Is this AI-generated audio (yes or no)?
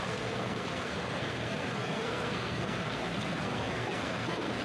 yes